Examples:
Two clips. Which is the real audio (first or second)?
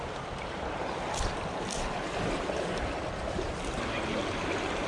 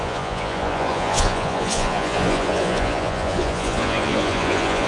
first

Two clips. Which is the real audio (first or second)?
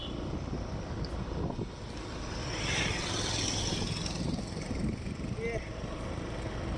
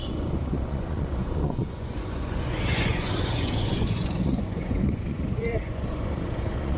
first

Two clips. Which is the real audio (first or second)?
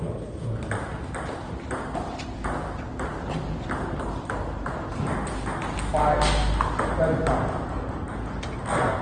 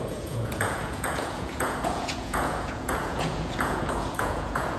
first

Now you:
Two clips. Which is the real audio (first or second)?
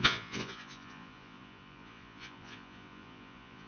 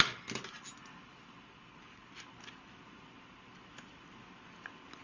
second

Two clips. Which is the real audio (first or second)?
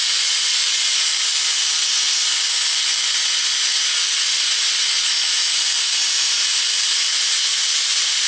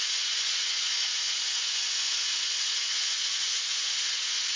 first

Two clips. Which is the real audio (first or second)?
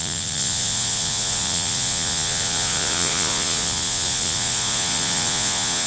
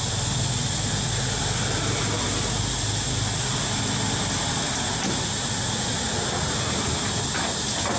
second